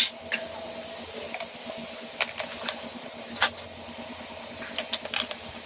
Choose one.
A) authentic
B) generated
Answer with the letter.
A